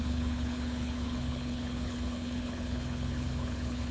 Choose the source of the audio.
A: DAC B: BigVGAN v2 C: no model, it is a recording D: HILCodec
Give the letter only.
D